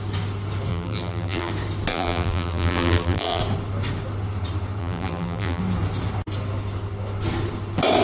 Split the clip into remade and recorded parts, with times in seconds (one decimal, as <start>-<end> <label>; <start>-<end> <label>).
0.0-0.7 recorded; 0.7-1.5 remade; 1.5-1.9 recorded; 1.9-3.4 remade; 3.4-4.8 recorded; 4.8-5.6 remade; 5.6-8.0 recorded